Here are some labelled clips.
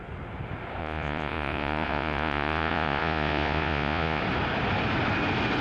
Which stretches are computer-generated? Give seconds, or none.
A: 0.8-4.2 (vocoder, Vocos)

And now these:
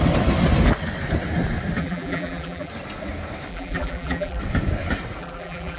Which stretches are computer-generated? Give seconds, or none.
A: 1.8-2.7 (vocoder, BigVGAN v2); 3.5-4.4; 5.2-5.8

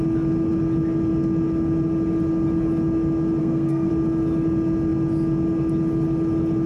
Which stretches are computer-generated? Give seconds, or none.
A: 3.4-3.9 (codec, SNAC)

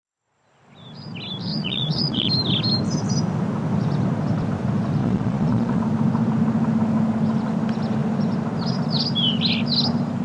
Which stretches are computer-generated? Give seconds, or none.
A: 1.5-2.3 (vocoder, Vocos); 5.0-5.8